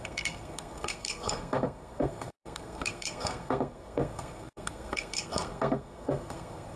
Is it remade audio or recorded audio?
remade